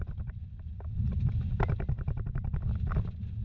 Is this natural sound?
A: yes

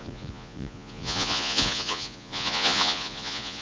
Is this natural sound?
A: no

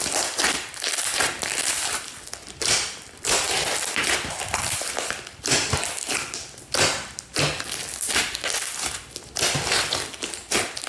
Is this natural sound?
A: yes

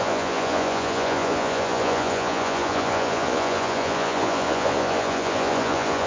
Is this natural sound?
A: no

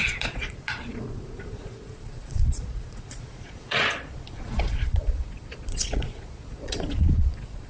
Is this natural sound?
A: no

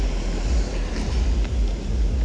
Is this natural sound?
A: yes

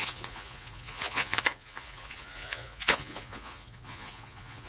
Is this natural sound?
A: no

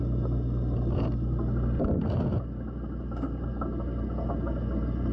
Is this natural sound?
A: yes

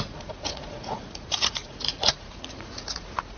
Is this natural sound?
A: no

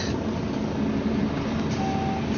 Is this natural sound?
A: yes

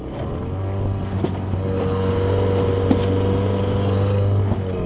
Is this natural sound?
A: yes